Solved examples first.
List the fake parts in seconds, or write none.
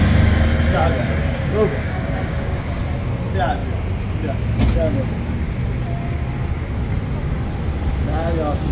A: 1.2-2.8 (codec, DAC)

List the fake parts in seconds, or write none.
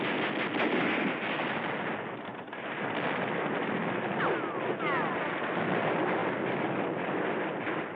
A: none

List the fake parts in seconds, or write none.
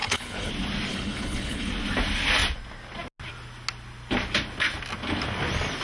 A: 0.0-0.5 (codec, HILCodec); 0.9-1.7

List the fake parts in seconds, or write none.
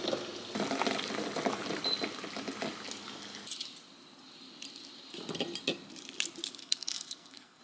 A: 6.6-7.6 (codec, SNAC)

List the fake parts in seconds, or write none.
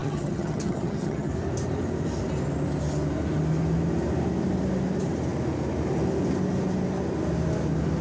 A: 0.0-1.3 (vocoder, HiFi-GAN)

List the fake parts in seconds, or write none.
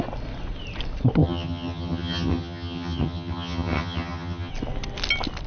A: 1.2-4.5 (vocoder, HiFi-GAN)